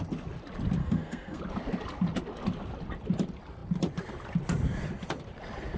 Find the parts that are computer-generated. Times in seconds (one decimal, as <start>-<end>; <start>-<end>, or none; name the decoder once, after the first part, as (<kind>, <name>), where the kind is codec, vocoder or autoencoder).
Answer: 0.8-1.4 (codec, SNAC)